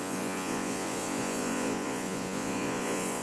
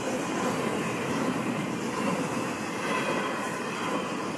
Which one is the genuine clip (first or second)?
second